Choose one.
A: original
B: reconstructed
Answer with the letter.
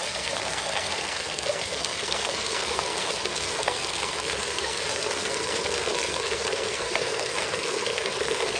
B